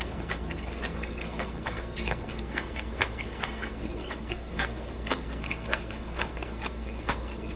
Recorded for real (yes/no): no